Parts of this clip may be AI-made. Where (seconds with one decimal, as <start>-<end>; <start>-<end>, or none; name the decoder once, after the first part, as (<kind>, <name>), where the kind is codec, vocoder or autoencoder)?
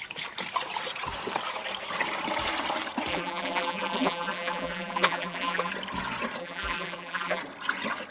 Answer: 3.1-5.7 (vocoder, BigVGAN v2); 6.4-7.4